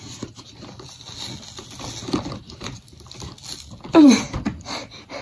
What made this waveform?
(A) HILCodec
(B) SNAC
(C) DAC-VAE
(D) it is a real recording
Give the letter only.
D